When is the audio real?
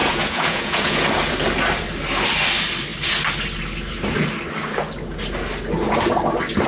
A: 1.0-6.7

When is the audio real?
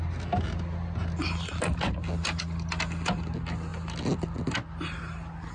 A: 0.0-5.5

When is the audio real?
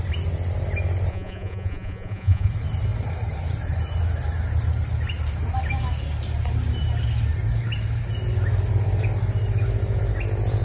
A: 0.0-1.1; 2.5-10.6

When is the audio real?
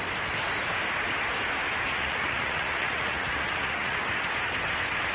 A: 0.0-1.9; 4.0-5.1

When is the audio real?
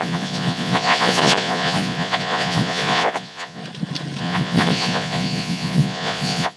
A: 3.6-4.2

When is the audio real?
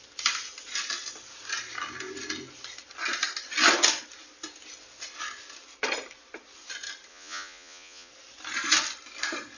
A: 0.0-7.1; 8.1-9.6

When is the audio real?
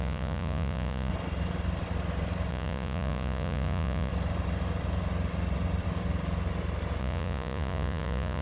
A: 1.1-2.5; 4.1-7.0